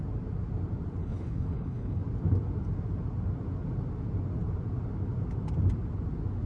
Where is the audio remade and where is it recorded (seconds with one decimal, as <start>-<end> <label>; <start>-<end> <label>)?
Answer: 0.0-1.0 recorded; 1.0-2.0 remade; 2.0-6.5 recorded